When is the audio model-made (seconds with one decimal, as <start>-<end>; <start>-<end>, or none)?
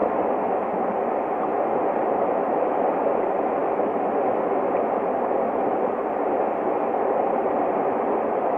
none